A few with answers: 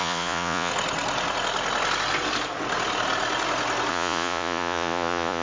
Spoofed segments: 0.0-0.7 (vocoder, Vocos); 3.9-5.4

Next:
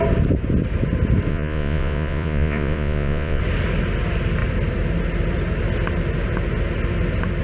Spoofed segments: 1.3-3.4 (vocoder, Vocos)

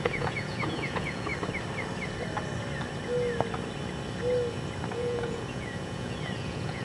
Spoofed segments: 0.0-1.3 (vocoder, Vocos); 4.9-6.8

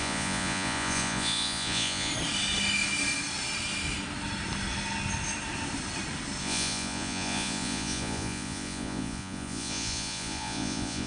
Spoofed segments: 0.0-2.1 (vocoder, Vocos); 6.4-11.1

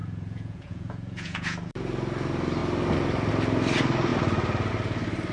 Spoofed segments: 0.0-1.7 (vocoder, Vocos)